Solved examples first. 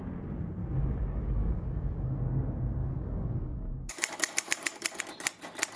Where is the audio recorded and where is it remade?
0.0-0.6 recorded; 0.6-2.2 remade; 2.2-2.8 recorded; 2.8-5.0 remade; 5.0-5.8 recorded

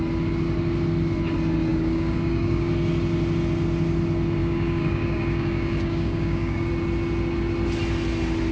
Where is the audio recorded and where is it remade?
0.0-1.7 recorded; 1.7-2.7 remade; 2.7-4.4 recorded; 4.4-6.7 remade; 6.7-8.5 recorded

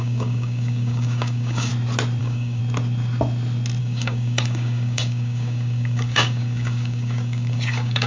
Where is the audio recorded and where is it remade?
0.0-1.7 remade; 1.7-2.2 recorded; 2.2-2.6 remade; 2.6-3.8 recorded; 3.8-8.1 remade

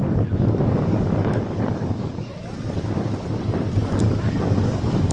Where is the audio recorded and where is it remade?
0.0-2.3 remade; 2.3-4.0 recorded; 4.0-5.1 remade

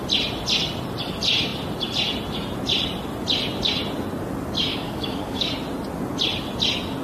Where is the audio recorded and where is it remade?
0.0-4.7 recorded; 4.7-5.5 remade; 5.5-7.0 recorded

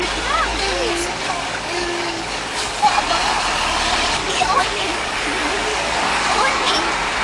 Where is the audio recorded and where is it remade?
0.0-0.5 recorded; 0.5-2.7 remade; 2.7-4.2 recorded; 4.2-6.7 remade; 6.7-7.2 recorded